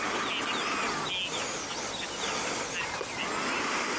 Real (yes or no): yes